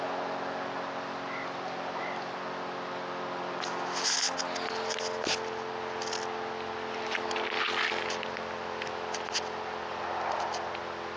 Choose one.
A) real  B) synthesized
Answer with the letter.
A